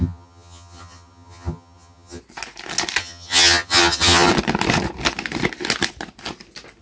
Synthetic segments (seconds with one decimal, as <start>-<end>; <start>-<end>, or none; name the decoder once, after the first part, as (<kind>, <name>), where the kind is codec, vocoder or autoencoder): 0.0-2.2 (vocoder, HiFi-GAN); 3.0-4.3